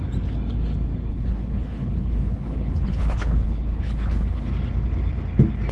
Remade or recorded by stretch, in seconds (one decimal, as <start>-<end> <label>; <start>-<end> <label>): 0.0-1.1 recorded; 1.1-4.5 remade; 4.5-5.7 recorded